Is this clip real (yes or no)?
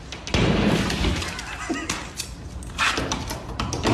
yes